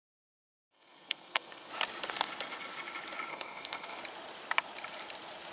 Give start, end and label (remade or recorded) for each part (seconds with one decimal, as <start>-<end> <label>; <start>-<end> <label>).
0.0-1.7 remade; 1.7-3.3 recorded; 3.3-4.0 remade; 4.0-5.5 recorded